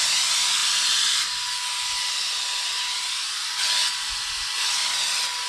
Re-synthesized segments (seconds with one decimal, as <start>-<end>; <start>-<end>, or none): none